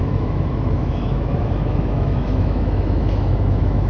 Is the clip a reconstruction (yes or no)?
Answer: yes